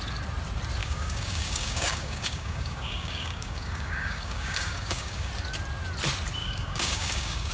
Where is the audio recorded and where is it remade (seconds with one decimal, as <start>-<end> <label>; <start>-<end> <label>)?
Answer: 0.0-0.8 recorded; 0.8-5.3 remade; 5.3-6.4 recorded; 6.4-7.5 remade